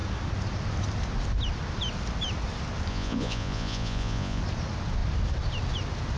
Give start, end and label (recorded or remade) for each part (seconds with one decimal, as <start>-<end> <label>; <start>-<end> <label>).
0.0-2.9 recorded; 2.9-4.4 remade; 4.4-6.2 recorded